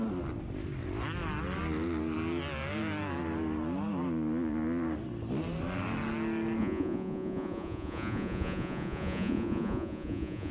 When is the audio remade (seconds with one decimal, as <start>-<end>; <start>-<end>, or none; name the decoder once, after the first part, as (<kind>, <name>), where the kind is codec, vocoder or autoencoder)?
6.6-10.5 (vocoder, Vocos)